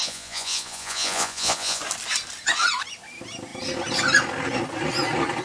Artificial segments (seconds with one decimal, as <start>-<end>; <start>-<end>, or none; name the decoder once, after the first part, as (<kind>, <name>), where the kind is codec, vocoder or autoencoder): 0.0-1.8 (vocoder, Vocos)